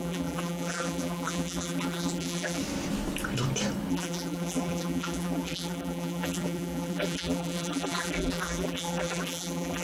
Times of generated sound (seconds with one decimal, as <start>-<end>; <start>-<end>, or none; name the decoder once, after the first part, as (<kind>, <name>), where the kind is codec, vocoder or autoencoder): 0.0-2.6 (vocoder, BigVGAN v2); 3.9-9.8